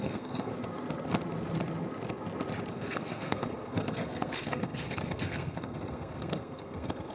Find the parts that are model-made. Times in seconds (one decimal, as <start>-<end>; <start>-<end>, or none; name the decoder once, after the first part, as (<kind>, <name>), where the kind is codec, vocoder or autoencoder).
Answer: 0.0-0.5 (codec, SNAC); 2.7-7.1